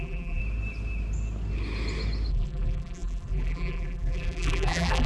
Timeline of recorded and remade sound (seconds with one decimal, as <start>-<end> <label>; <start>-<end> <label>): 0.0-0.4 remade; 0.4-2.3 recorded; 2.3-5.1 remade